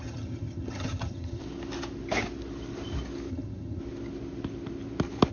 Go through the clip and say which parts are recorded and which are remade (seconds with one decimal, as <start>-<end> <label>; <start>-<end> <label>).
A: 0.0-1.4 remade; 1.4-3.3 recorded; 3.3-3.8 remade; 3.8-5.3 recorded